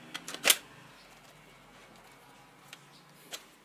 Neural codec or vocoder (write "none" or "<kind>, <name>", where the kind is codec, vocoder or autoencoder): none